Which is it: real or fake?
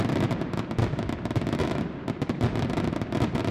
real